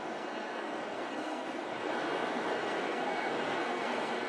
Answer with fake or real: fake